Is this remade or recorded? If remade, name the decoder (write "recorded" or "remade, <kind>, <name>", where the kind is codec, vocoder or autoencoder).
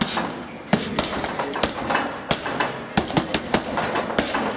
recorded